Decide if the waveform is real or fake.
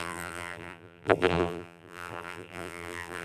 fake